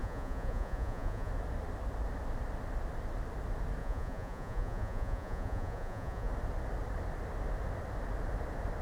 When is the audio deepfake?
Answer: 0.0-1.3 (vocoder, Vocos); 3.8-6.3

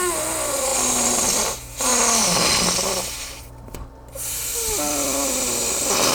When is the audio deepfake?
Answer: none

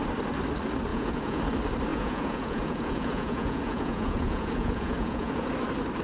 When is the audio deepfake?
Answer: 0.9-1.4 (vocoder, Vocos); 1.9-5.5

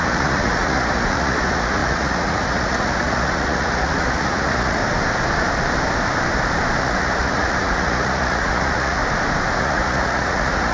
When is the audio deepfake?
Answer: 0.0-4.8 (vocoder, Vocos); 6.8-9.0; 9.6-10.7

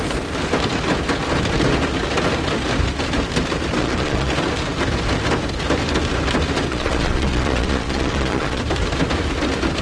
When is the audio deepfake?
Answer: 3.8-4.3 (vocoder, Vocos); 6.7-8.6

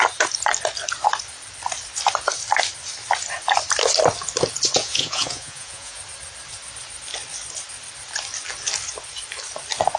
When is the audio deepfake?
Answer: 4.8-6.0 (vocoder, Vocos)